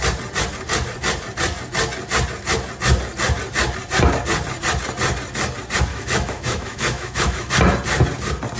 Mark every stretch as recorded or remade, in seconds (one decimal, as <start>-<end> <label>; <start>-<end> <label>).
0.0-5.9 recorded; 5.9-7.5 remade; 7.5-8.6 recorded